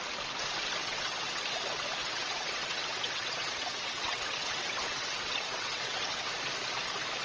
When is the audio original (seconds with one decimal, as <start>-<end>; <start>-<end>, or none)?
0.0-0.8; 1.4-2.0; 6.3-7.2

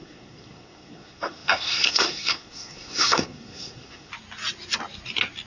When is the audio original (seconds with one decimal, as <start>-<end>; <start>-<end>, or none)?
4.1-5.5

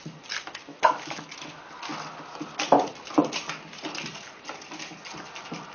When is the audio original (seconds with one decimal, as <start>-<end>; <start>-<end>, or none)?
0.0-0.7; 1.3-5.7